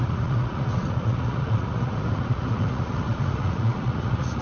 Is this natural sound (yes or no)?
no